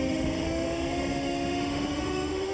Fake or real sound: fake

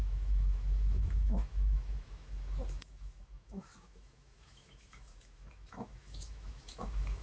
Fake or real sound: fake